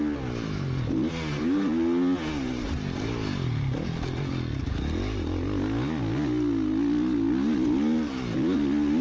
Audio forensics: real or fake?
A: real